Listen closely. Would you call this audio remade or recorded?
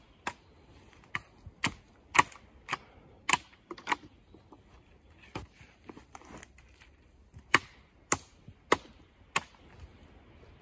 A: recorded